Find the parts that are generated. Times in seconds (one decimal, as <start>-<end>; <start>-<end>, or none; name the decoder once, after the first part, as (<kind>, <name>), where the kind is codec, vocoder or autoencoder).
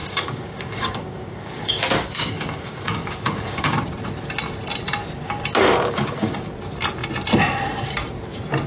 0.0-3.8 (codec, DAC); 5.7-6.5